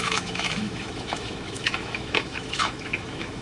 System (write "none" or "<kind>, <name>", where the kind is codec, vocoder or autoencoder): autoencoder, DAC-VAE